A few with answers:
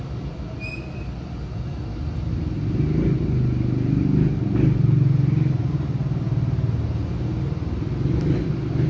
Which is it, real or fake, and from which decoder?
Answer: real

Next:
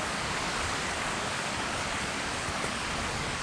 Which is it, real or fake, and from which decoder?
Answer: fake, codec, DAC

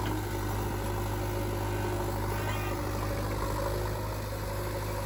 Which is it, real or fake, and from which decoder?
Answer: real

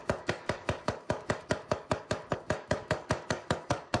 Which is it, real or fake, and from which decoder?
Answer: fake, codec, DAC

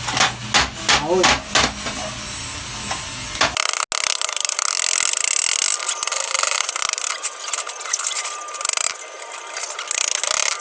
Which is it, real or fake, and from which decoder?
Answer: real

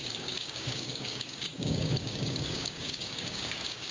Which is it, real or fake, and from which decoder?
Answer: fake, codec, DAC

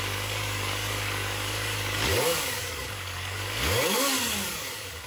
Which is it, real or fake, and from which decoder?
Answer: fake, codec, DAC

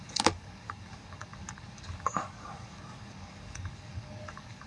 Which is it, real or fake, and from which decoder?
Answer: fake, codec, DAC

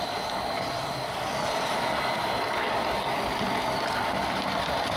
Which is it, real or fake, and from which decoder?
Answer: real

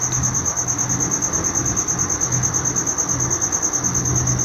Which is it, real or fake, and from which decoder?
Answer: real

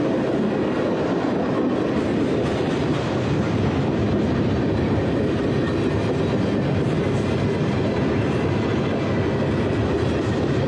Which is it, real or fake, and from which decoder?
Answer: real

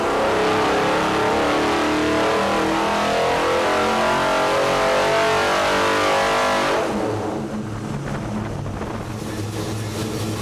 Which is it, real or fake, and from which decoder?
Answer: real